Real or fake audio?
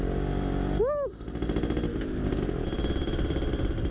real